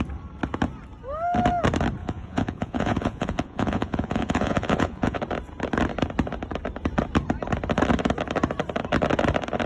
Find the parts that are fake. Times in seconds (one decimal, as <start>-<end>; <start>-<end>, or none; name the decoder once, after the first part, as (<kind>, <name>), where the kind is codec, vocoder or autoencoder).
2.0-5.2 (vocoder, Vocos)